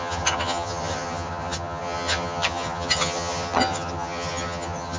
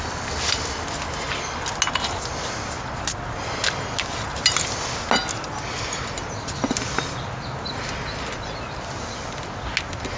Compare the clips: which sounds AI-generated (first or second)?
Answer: first